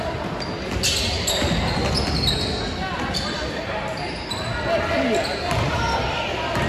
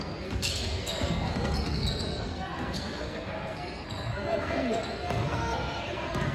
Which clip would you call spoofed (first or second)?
second